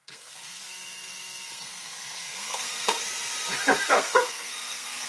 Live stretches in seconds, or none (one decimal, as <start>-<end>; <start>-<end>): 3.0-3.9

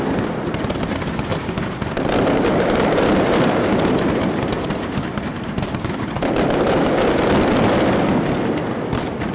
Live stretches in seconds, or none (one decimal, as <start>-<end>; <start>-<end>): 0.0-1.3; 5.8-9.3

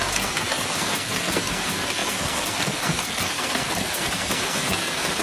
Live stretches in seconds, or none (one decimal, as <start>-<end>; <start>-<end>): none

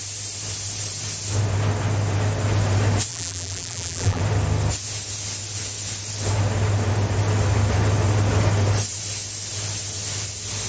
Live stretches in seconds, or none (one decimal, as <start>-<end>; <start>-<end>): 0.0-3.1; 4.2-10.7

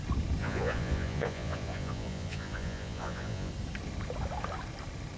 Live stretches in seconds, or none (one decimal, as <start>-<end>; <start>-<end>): 0.0-0.4; 3.5-5.2

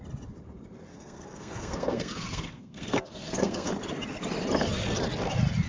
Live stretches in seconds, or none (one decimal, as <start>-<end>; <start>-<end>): 0.0-0.9; 3.7-5.7